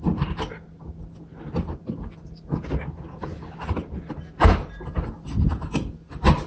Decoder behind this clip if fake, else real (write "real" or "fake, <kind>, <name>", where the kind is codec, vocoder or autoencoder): real